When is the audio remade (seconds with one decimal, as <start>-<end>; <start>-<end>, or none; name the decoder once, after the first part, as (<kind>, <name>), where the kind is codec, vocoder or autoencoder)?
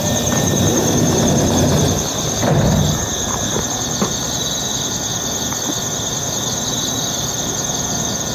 0.0-8.3 (vocoder, BigVGAN v2)